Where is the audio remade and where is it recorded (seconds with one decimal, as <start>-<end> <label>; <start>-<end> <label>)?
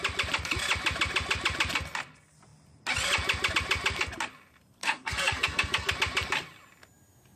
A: 0.0-4.8 recorded; 4.8-5.9 remade; 5.9-7.4 recorded